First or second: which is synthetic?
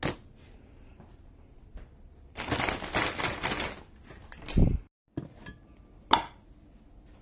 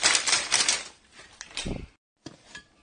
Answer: second